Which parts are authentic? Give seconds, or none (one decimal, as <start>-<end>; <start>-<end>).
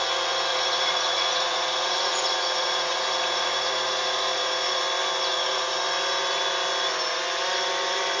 0.0-0.5; 4.8-5.3; 5.8-8.2